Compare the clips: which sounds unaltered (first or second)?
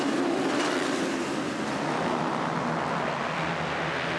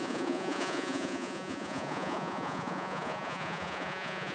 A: first